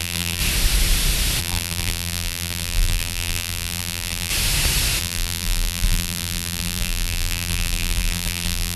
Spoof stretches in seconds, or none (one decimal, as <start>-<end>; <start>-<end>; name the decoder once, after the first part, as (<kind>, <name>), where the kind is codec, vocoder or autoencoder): 0.0-0.4 (vocoder, BigVGAN v2); 1.4-4.3; 5.0-8.8